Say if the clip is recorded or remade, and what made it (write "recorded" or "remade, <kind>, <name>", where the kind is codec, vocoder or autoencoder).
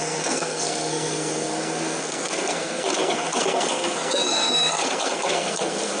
remade, codec, SNAC